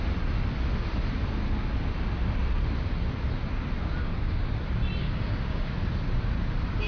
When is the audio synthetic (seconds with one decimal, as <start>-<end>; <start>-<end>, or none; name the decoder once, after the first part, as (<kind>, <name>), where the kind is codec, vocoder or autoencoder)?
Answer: 4.0-4.5 (codec, DAC); 5.0-5.7